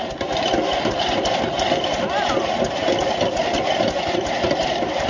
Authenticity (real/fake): real